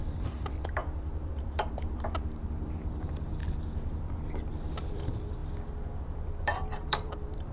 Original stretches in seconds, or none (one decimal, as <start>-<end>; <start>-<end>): 0.8-1.3; 3.4-4.9; 5.4-6.0